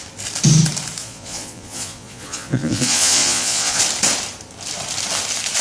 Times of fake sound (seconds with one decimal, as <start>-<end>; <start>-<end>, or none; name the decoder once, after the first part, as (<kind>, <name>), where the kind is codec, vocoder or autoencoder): 1.0-3.8 (vocoder, Vocos)